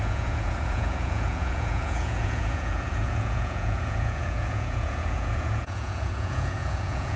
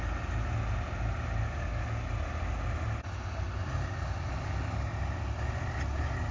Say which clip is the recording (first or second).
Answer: second